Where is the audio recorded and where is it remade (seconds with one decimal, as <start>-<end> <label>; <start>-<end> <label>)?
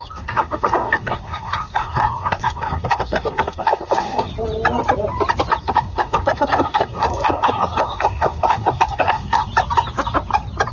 0.0-4.3 remade; 4.3-5.6 recorded; 5.6-9.5 remade; 9.5-10.7 recorded